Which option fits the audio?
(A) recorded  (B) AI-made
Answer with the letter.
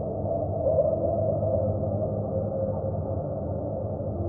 A